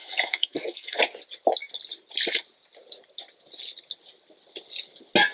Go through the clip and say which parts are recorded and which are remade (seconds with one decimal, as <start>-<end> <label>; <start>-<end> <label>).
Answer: 0.0-1.0 remade; 1.0-5.3 recorded